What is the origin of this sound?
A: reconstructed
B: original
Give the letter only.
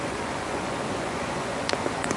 A